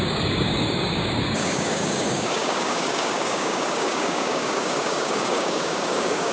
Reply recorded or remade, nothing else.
remade